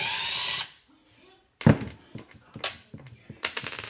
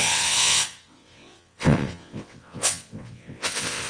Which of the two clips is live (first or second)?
first